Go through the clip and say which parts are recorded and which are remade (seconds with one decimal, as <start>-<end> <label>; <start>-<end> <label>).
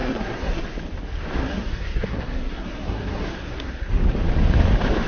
0.0-0.6 remade; 0.6-1.4 recorded; 1.4-3.9 remade; 3.9-5.1 recorded